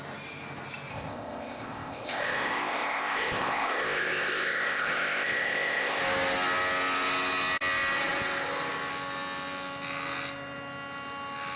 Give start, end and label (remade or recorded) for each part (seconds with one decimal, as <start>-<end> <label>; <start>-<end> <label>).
0.0-0.9 recorded; 0.9-6.0 remade; 6.0-11.6 recorded